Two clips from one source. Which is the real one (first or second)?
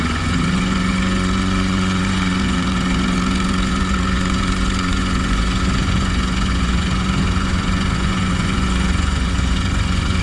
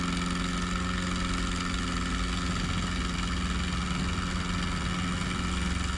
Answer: second